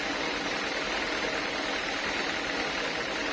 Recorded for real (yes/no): yes